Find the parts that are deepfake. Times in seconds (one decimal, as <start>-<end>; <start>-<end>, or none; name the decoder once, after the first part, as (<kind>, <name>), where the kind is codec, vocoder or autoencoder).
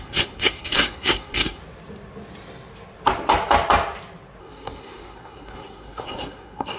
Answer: 0.0-1.6 (codec, SNAC); 4.4-6.8